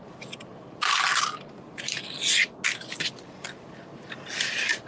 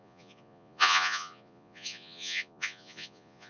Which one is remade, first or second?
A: second